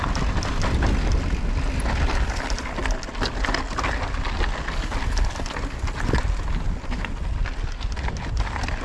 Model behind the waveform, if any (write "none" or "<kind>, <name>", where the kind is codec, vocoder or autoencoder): none